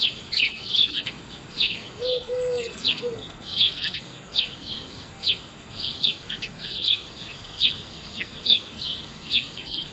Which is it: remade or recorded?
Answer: remade